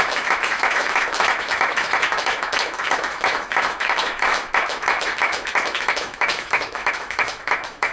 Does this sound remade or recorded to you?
remade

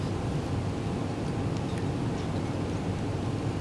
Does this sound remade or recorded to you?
recorded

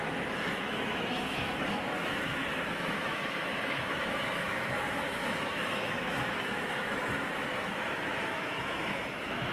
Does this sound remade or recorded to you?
remade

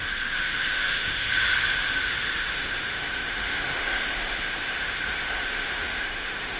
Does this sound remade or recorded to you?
remade